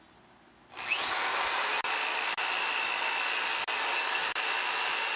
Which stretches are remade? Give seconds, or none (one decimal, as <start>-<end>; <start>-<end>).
none